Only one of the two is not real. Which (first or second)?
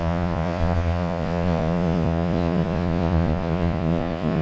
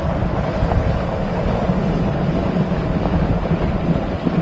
first